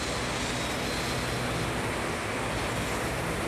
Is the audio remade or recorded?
recorded